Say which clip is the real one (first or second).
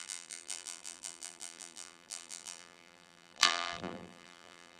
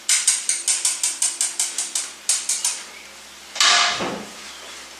second